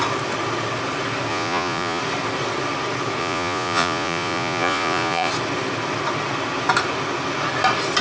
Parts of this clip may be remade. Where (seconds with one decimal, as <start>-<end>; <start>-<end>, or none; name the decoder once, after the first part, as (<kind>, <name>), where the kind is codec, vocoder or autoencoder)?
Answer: 1.3-2.0 (vocoder, Vocos); 3.2-5.3